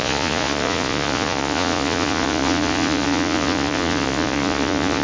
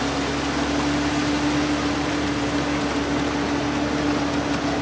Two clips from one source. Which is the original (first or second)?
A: second